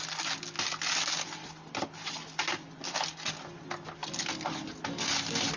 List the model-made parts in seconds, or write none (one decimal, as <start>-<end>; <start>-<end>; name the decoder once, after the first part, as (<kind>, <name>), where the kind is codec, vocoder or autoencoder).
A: none